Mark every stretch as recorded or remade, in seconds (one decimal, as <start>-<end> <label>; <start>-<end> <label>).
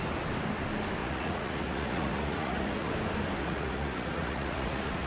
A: 0.0-1.0 recorded; 1.0-2.9 remade; 2.9-3.4 recorded; 3.4-5.1 remade